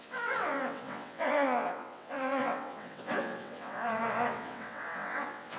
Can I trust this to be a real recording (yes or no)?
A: no